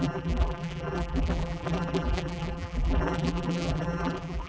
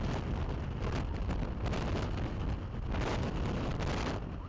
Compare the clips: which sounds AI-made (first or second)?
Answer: first